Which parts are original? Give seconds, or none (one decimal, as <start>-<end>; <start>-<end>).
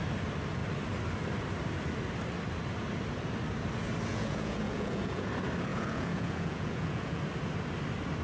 0.0-4.1; 5.3-5.7; 7.2-8.2